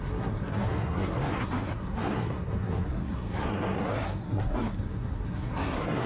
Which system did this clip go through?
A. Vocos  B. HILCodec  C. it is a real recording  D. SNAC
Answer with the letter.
D